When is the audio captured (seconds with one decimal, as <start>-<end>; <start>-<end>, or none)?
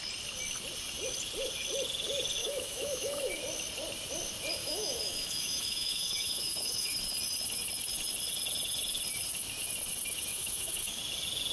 0.0-2.4; 3.4-4.6; 7.0-10.3; 11.0-11.5